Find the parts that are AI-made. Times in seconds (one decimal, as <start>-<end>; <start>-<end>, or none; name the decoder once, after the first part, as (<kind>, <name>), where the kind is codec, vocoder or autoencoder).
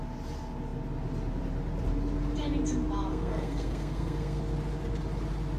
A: 3.1-4.4 (codec, SNAC)